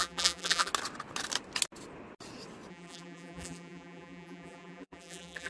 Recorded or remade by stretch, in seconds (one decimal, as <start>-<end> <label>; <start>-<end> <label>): 0.0-0.7 remade; 0.7-2.7 recorded; 2.7-5.5 remade